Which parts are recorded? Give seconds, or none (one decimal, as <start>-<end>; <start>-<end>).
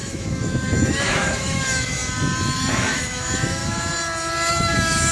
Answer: 2.0-2.7; 3.6-4.5